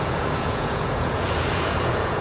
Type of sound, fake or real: fake